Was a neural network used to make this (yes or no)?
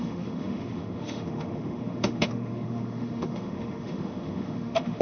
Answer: yes